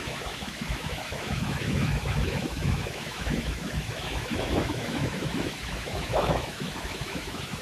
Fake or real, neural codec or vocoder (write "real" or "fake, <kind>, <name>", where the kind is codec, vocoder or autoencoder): fake, autoencoder, DAC-VAE